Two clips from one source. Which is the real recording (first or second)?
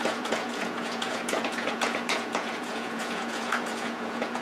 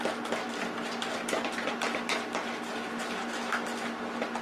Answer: second